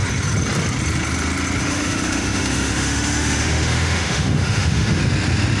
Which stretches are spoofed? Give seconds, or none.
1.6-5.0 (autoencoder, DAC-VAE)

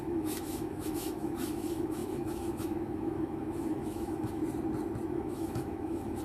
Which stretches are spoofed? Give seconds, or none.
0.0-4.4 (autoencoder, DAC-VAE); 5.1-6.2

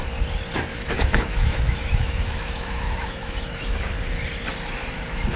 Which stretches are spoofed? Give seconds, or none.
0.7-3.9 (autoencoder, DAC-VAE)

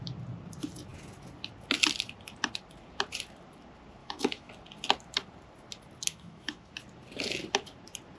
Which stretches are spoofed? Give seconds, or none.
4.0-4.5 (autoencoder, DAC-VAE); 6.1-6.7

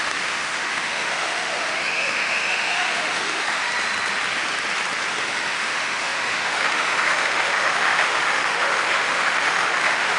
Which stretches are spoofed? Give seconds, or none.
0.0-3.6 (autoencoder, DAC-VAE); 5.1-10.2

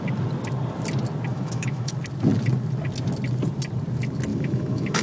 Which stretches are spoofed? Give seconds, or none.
1.3-1.9 (autoencoder, DAC-VAE); 4.3-5.0

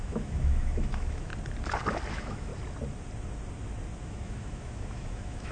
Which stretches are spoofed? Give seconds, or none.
0.0-1.3 (autoencoder, DAC-VAE); 2.1-2.5; 4.0-5.5